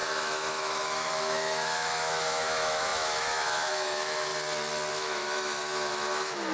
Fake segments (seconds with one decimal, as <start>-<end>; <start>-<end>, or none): 0.0-4.3; 4.9-6.5

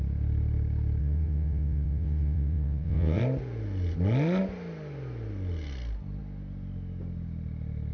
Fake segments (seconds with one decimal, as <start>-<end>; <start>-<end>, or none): 1.0-3.2